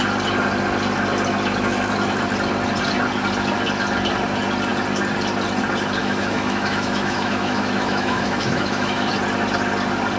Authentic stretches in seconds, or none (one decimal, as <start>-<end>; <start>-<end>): 0.0-6.0; 9.1-10.2